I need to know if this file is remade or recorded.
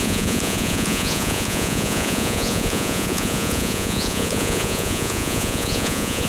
remade